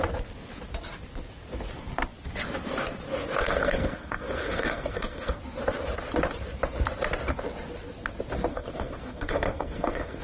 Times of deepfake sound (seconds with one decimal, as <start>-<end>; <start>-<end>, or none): 3.4-5.4; 8.5-10.2